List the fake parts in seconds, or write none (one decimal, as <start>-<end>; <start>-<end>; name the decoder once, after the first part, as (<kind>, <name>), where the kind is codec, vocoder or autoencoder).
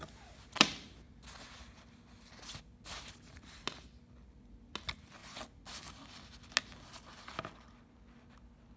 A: none